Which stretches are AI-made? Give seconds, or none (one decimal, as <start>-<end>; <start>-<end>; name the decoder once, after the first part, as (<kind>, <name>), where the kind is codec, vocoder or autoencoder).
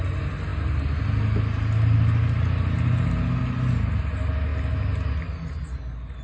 none